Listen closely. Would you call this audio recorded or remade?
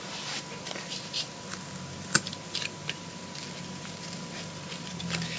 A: recorded